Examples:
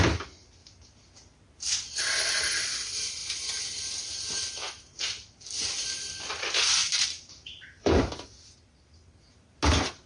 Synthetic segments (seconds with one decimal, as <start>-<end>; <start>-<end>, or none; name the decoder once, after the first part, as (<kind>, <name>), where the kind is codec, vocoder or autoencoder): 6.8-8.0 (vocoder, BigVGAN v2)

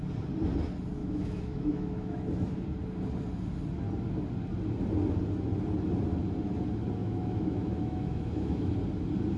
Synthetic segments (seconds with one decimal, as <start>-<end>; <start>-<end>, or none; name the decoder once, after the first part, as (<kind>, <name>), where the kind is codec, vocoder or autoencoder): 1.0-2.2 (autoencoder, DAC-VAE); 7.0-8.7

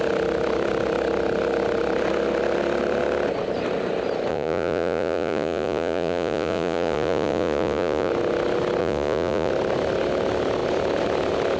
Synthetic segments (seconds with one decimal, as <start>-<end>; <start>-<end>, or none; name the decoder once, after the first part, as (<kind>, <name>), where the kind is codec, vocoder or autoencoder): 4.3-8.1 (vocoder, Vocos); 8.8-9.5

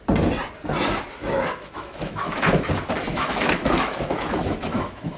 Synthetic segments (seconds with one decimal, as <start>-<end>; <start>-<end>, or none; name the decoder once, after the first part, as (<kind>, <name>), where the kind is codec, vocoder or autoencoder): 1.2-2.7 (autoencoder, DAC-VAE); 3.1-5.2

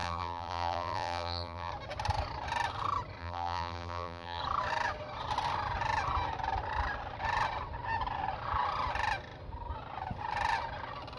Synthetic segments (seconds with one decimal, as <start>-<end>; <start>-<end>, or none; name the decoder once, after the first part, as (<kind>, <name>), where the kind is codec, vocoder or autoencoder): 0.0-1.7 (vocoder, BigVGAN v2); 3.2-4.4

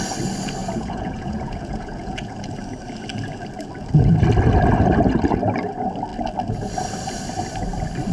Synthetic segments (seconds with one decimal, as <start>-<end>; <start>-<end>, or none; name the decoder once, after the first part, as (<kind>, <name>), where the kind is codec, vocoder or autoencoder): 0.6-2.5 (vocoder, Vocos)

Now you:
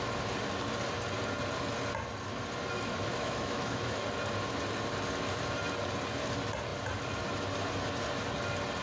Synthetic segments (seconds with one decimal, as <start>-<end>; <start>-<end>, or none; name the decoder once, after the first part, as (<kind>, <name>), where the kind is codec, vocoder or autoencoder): 3.1-4.0 (autoencoder, DAC-VAE)

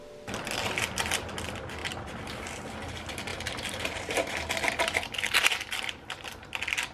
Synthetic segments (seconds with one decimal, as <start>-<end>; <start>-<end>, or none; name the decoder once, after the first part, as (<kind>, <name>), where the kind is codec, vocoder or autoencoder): 3.3-4.5 (vocoder, BigVGAN v2)